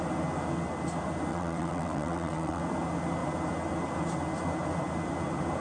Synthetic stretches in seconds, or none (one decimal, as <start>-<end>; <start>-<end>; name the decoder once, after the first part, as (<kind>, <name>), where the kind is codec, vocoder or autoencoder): 1.3-2.6 (vocoder, WaveNeXt)